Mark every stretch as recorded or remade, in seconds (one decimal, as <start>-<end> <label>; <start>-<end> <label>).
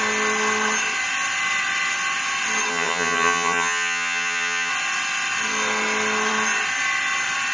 0.0-2.7 recorded; 2.7-4.7 remade; 4.7-7.5 recorded